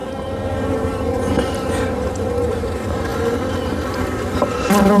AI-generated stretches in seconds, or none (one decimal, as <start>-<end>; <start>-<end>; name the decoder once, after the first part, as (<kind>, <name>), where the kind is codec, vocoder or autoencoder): none